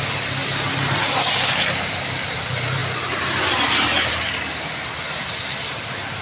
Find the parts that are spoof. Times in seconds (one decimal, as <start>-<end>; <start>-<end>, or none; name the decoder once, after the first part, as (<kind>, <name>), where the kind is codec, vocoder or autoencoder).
none